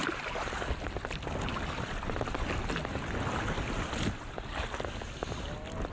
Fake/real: real